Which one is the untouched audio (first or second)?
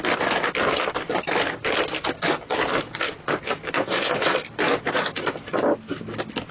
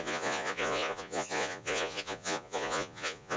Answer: first